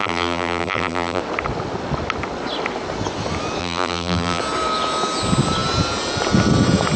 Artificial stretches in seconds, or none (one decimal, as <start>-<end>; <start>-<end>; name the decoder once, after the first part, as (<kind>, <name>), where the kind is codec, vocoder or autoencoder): 0.0-1.2 (vocoder, BigVGAN v2); 3.6-4.4